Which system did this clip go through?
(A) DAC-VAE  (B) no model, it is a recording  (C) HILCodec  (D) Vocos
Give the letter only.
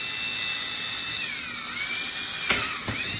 B